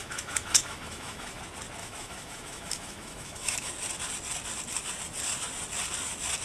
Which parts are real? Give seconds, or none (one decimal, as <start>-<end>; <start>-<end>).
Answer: 1.4-1.8; 3.7-6.4